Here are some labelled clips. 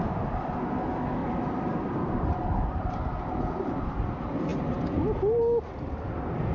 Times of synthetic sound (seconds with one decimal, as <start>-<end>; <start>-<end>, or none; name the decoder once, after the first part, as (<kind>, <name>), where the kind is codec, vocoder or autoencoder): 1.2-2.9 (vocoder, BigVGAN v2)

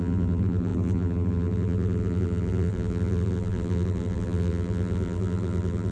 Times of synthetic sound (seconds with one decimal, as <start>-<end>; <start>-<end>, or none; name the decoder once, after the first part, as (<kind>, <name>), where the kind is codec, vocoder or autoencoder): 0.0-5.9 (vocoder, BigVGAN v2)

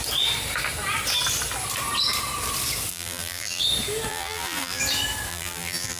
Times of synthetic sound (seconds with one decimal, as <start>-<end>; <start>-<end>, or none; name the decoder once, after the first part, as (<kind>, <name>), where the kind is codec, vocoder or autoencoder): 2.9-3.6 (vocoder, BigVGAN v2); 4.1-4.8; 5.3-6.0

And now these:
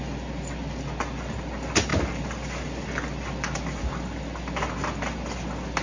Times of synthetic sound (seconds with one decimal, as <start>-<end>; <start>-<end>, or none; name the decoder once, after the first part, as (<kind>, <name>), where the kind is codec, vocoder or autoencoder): none

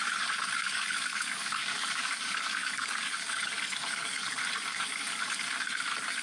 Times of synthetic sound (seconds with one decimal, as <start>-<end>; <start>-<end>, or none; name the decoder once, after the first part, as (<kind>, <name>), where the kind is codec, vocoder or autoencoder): 0.6-4.3 (codec, DAC); 4.7-5.2